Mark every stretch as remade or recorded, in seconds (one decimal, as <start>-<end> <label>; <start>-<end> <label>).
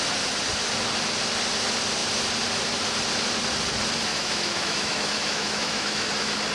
0.0-4.1 recorded; 4.1-6.1 remade; 6.1-6.5 recorded